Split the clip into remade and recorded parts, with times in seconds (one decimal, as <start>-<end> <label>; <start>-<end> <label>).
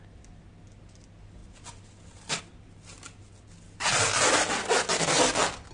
0.0-5.7 recorded